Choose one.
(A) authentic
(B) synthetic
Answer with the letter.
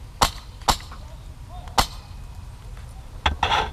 A